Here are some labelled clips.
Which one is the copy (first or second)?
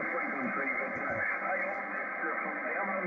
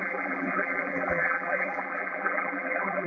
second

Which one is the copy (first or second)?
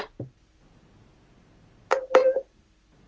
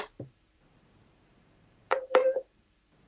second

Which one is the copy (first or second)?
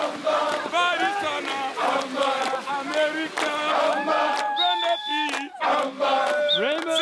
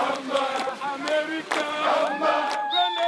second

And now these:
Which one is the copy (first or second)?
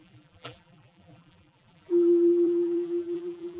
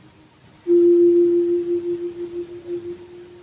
first